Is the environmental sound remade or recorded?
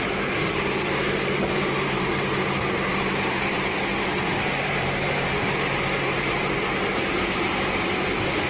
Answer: remade